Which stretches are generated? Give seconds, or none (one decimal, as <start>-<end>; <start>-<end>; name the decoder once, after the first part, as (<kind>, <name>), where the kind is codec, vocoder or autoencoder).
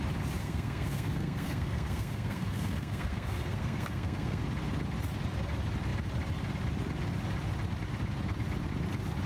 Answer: 0.4-4.4 (codec, SNAC)